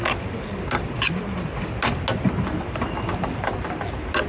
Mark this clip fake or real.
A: real